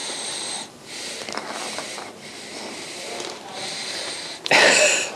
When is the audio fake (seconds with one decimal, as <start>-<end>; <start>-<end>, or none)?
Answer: 2.1-5.2